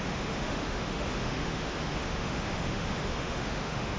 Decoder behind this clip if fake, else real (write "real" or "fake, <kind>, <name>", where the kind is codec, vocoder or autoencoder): fake, autoencoder, DAC-VAE